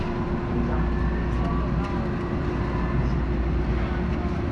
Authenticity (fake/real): real